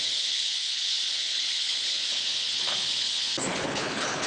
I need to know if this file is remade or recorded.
remade